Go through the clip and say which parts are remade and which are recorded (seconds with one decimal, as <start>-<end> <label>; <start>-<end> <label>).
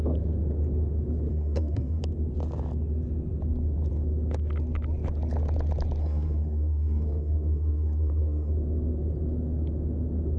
0.0-1.3 recorded; 1.3-2.0 remade; 2.0-6.0 recorded; 6.0-8.5 remade; 8.5-10.4 recorded